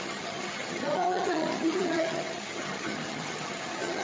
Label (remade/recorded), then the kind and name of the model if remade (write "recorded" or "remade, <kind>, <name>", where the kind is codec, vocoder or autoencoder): remade, vocoder, HiFi-GAN